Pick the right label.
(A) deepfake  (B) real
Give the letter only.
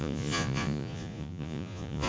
A